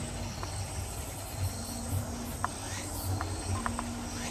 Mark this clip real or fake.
real